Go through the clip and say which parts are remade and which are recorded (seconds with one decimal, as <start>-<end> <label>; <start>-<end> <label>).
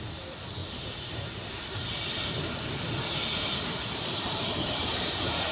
0.0-5.5 remade